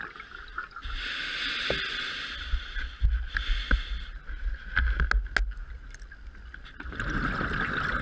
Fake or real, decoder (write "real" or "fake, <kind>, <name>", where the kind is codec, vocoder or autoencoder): real